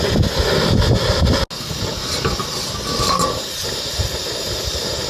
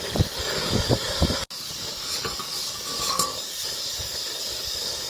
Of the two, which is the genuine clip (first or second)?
first